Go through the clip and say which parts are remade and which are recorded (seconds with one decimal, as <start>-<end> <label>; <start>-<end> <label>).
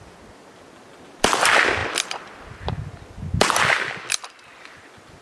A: 0.0-5.2 recorded